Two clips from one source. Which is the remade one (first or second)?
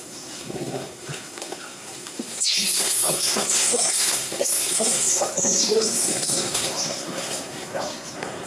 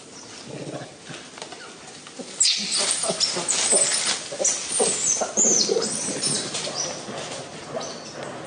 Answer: first